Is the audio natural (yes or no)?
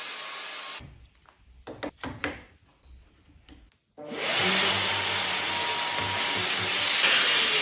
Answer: yes